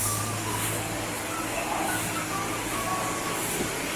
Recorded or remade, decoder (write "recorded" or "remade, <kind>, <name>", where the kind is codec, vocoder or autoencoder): remade, codec, DAC